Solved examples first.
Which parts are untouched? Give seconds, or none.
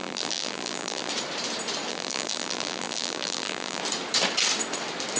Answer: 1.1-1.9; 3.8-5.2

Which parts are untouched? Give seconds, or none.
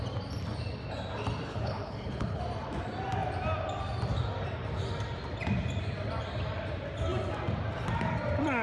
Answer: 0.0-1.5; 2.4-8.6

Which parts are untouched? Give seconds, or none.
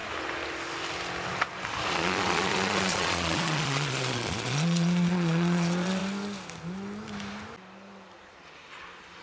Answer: 0.0-1.9; 6.0-9.2